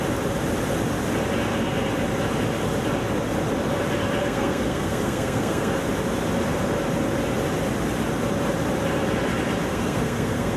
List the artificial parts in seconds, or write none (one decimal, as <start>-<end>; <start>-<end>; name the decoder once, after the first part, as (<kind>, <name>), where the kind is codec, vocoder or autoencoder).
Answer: 4.2-5.8 (codec, SNAC); 9.7-10.6